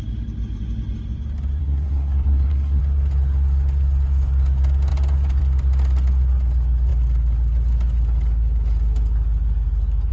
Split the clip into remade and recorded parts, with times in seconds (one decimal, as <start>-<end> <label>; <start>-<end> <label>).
0.0-1.6 recorded; 1.6-2.8 remade; 2.8-10.1 recorded